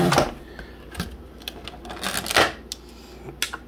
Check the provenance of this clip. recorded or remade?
recorded